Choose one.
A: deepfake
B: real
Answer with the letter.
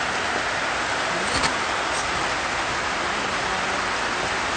B